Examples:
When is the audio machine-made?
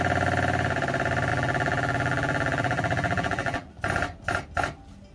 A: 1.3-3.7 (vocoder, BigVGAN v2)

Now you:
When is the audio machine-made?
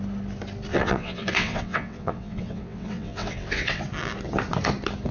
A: 0.7-3.8 (vocoder, WaveNeXt)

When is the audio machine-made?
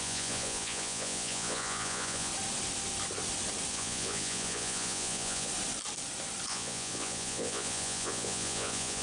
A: 0.0-2.3 (vocoder, Vocos); 3.7-5.5; 6.5-9.0